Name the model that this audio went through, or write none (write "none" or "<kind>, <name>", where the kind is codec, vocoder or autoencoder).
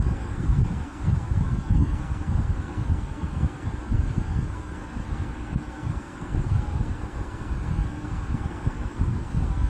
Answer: codec, SNAC